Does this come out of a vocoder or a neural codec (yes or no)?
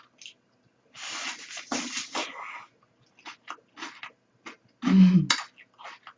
no